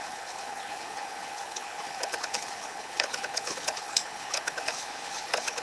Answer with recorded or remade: remade